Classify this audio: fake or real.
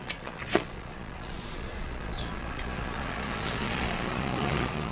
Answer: fake